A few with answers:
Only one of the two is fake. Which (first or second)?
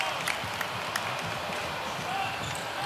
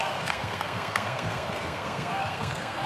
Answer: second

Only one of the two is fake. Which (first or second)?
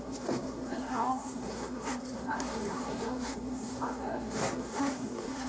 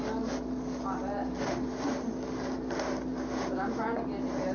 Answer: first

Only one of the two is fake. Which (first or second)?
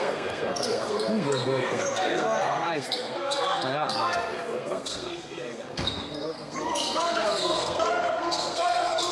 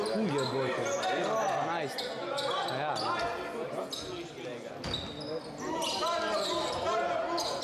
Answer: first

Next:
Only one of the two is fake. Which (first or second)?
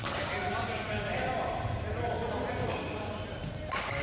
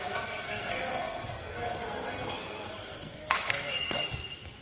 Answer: second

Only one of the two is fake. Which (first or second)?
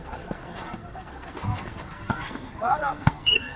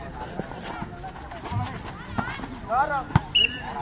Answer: first